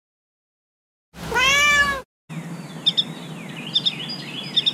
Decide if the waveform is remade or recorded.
recorded